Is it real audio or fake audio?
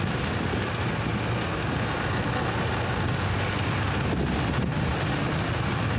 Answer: real